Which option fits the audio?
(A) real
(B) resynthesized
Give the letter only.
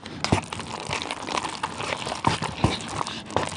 A